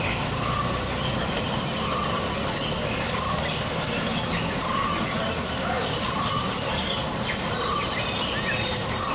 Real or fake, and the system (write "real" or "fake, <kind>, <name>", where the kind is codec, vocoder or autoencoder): real